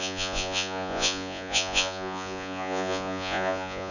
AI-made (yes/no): yes